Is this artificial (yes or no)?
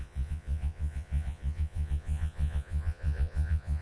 yes